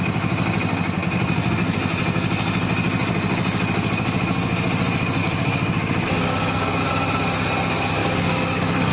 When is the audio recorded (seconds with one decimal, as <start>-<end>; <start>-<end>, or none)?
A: 0.0-5.2; 6.9-8.0